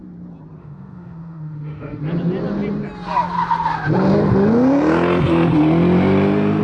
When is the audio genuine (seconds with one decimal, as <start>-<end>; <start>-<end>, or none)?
0.0-0.6; 2.0-6.6